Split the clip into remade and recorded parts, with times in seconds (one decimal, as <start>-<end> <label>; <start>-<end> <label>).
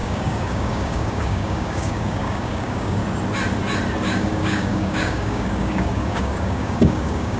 0.0-3.0 remade; 3.0-4.0 recorded; 4.0-7.4 remade